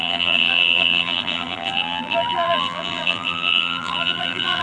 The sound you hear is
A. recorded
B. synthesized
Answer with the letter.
B